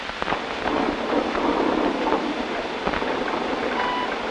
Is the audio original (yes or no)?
yes